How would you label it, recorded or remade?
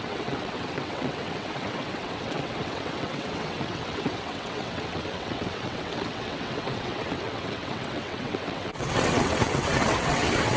remade